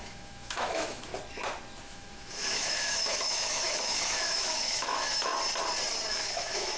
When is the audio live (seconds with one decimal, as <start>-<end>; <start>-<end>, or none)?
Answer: 1.1-1.8; 5.3-6.1